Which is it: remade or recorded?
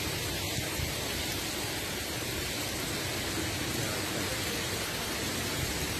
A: recorded